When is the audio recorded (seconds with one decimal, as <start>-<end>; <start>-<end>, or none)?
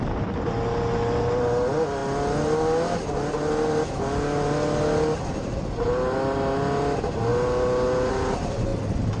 0.0-9.2